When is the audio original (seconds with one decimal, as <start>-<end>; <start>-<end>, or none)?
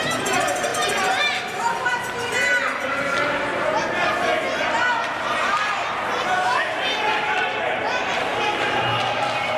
0.0-7.1; 7.8-9.6